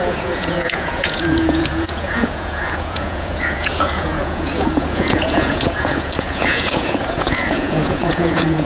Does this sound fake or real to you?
fake